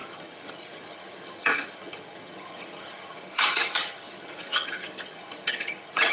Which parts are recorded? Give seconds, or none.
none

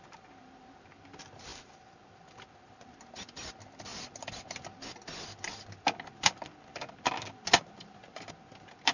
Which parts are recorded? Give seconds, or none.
0.0-8.9

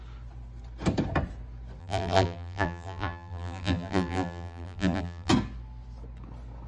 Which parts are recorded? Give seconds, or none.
0.0-1.8; 5.3-6.7

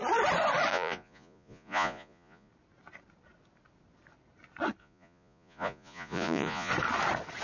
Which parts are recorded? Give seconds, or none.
0.0-0.7; 2.5-4.8; 6.7-7.4

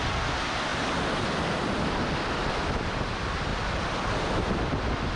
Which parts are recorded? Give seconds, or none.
0.0-3.5

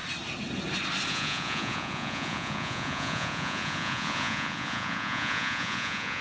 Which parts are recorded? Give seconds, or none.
0.0-1.1